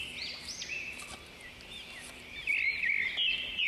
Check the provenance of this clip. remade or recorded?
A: recorded